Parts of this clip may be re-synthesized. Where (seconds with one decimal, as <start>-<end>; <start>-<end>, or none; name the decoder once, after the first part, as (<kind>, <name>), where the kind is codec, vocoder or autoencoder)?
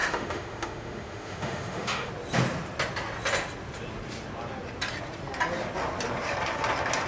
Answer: 0.0-2.1 (autoencoder, DAC-VAE)